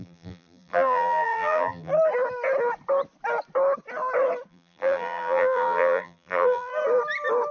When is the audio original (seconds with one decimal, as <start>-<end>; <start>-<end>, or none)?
1.9-4.5; 6.7-7.5